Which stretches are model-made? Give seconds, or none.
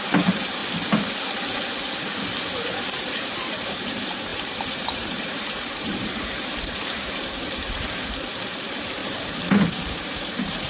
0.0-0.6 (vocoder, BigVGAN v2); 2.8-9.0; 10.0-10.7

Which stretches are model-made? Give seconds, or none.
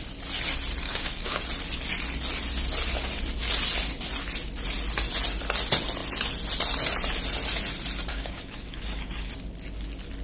0.8-1.4 (codec, DAC); 8.1-9.3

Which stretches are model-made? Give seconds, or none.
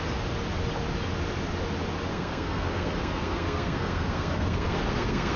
2.1-5.4 (codec, SNAC)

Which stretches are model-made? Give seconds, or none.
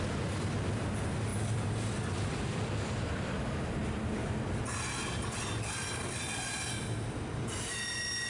1.3-2.8 (vocoder, BigVGAN v2)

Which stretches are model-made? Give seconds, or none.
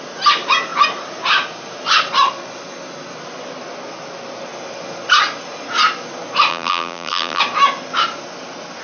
6.5-7.4 (vocoder, BigVGAN v2)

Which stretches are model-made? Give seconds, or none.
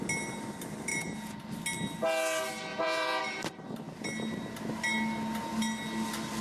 0.9-1.4 (vocoder, Vocos); 2.7-3.2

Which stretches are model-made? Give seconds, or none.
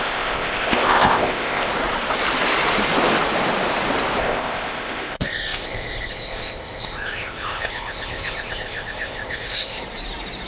0.0-1.7 (codec, ZipCodec); 4.2-9.8